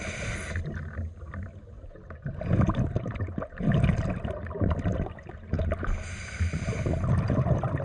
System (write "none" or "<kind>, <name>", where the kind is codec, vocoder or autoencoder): none